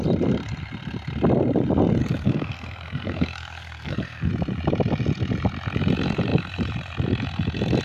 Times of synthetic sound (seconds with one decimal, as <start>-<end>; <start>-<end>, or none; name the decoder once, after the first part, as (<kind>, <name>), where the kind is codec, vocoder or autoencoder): 2.0-4.3 (codec, SNAC)